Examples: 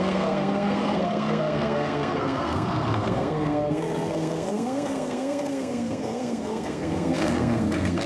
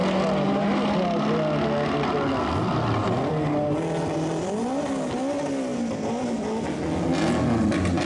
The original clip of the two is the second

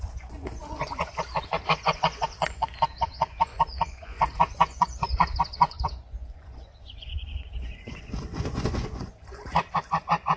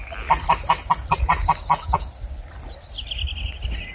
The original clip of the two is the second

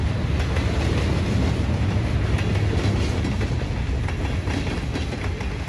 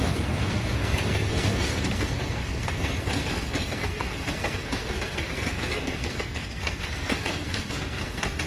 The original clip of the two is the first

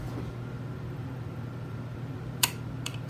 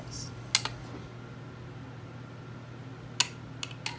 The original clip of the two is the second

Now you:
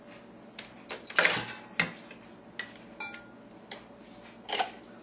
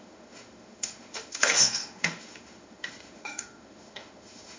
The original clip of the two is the first